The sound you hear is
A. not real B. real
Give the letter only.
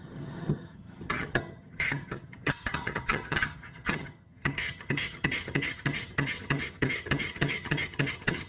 A